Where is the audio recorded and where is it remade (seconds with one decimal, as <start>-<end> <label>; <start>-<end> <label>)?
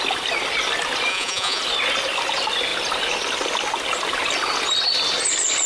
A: 0.0-1.1 recorded; 1.1-1.6 remade; 1.6-5.7 recorded